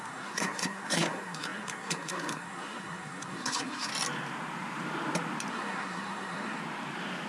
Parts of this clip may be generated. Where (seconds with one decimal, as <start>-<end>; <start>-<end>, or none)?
0.0-3.9; 5.5-6.6